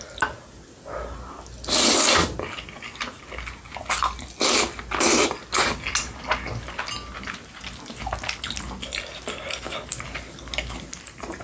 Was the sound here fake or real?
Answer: real